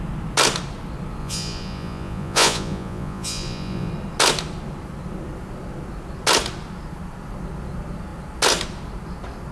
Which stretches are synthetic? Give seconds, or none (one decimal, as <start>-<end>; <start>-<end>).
1.2-3.9